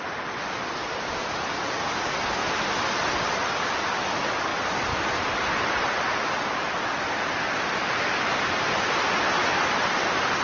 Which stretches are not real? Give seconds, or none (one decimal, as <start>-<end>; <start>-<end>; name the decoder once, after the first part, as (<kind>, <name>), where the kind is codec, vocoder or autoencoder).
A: none

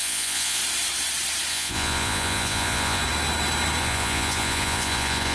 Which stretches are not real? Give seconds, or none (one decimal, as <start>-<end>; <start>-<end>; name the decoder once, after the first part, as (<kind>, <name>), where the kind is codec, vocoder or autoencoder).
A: 0.0-0.6 (vocoder, Vocos); 1.5-3.0; 3.8-5.3

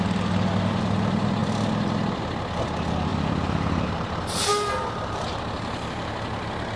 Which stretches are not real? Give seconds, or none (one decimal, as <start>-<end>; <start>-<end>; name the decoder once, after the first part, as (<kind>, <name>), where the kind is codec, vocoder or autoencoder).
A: 3.1-5.4 (vocoder, BigVGAN v2)

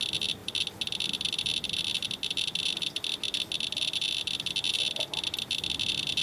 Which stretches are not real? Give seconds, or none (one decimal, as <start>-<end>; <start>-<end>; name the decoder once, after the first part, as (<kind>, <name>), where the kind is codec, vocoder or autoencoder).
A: none

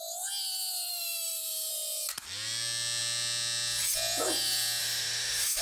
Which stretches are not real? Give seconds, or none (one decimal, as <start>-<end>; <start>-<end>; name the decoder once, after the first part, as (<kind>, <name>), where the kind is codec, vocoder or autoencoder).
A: 0.9-1.7 (autoencoder, DAC-VAE); 4.8-5.6

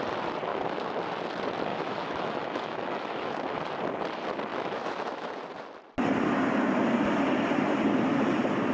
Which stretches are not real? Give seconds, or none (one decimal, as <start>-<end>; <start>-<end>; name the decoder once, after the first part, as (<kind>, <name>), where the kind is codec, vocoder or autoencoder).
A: 0.5-1.0 (autoencoder, DAC-VAE); 1.7-3.3; 4.5-5.3